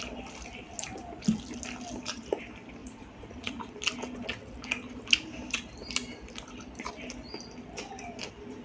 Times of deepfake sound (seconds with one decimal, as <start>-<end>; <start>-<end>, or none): 2.8-3.7